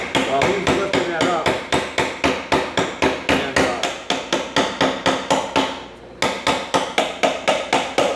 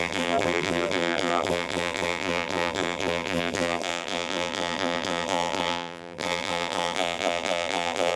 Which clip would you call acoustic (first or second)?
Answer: first